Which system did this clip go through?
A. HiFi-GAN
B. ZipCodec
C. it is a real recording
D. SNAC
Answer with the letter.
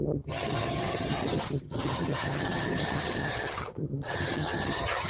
A